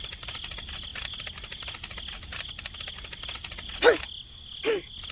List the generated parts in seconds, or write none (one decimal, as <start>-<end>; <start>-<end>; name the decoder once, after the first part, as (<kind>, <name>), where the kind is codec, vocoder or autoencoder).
none